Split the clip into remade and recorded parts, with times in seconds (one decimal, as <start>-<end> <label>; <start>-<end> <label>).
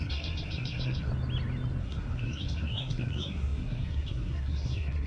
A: 0.0-1.1 remade; 1.1-1.8 recorded; 1.8-5.1 remade